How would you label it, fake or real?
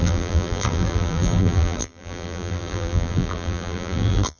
fake